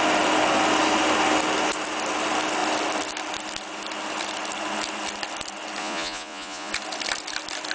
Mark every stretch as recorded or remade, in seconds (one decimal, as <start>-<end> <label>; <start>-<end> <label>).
0.0-5.8 recorded; 5.8-6.7 remade; 6.7-7.7 recorded